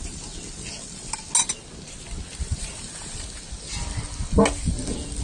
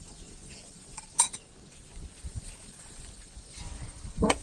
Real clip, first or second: first